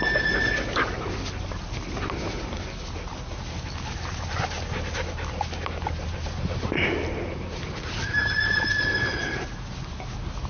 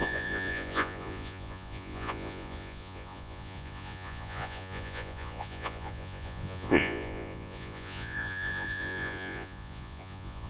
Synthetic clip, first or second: second